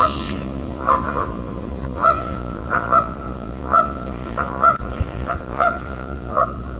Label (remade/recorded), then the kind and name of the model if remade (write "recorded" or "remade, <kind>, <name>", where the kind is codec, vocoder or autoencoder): remade, vocoder, Vocos